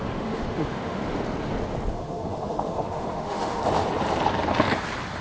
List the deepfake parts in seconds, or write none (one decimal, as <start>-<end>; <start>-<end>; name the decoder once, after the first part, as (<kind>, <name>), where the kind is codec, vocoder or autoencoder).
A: 0.0-1.0 (autoencoder, DAC-VAE); 1.9-3.6